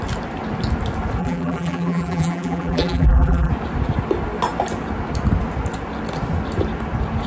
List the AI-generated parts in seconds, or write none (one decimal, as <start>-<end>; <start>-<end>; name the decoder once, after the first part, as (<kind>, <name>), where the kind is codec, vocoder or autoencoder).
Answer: 1.2-3.5 (vocoder, BigVGAN v2)